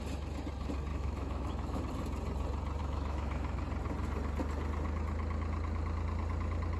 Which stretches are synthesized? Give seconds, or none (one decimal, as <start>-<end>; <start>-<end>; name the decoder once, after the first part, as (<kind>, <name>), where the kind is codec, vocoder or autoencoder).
0.9-1.8 (autoencoder, DAC-VAE); 2.8-3.6